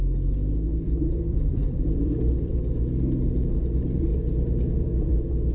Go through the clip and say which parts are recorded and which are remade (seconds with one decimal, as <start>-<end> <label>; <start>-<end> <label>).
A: 0.0-0.7 recorded; 0.7-2.8 remade; 2.8-5.5 recorded